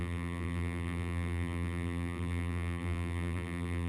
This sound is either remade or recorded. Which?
remade